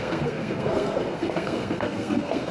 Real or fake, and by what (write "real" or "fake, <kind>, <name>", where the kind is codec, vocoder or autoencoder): fake, codec, SNAC